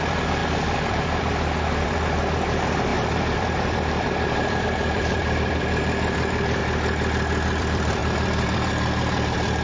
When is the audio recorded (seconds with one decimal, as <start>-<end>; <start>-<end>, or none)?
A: 6.6-7.6